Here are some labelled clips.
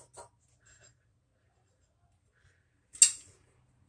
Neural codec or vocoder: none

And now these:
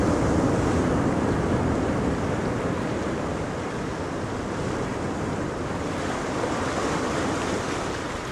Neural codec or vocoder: none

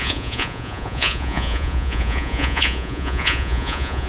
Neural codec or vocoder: vocoder, Vocos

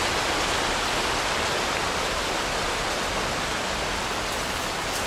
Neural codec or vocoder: none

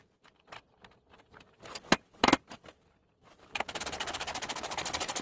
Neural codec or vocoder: none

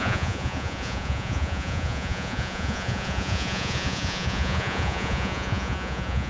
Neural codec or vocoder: vocoder, Vocos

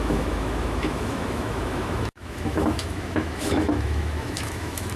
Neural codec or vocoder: autoencoder, DAC-VAE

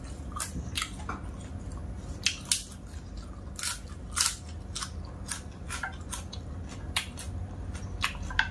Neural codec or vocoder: none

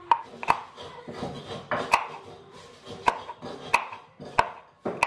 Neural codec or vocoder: none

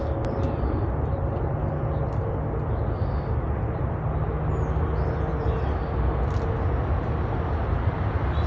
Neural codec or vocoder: none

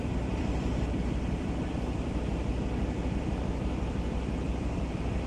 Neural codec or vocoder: vocoder, BigVGAN v2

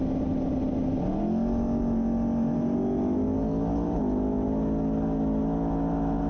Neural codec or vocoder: none